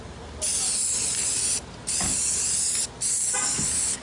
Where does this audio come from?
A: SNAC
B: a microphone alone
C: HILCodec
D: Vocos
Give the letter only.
B